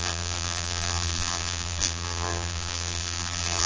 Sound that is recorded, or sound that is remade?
remade